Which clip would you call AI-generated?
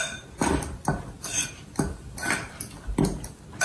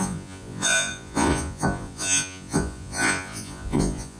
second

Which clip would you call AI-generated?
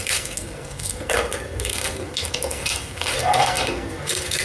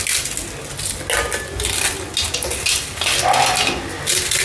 first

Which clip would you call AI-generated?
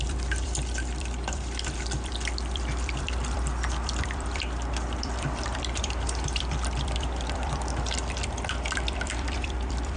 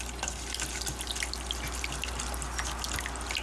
first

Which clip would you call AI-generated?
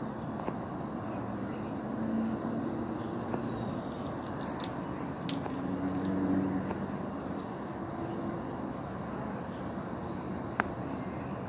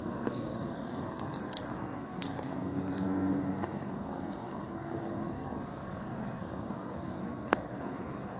second